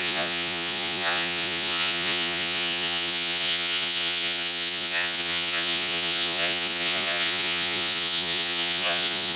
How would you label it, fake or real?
fake